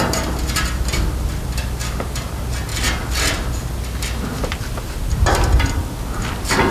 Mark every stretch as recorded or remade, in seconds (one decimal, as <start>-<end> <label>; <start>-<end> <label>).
0.0-6.7 recorded